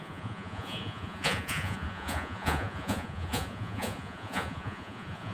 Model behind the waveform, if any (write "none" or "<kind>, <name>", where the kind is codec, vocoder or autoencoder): vocoder, Vocos